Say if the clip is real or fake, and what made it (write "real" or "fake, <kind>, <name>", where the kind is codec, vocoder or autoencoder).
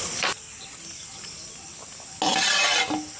real